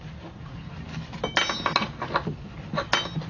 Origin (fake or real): real